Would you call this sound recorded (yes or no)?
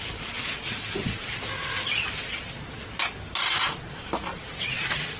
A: yes